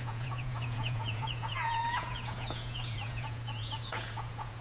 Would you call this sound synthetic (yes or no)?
yes